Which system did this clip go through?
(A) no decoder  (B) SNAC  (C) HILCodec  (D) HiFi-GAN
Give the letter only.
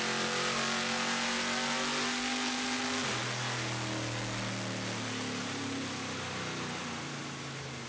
A